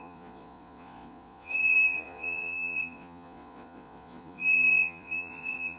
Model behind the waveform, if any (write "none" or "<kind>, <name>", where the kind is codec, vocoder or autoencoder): vocoder, Vocos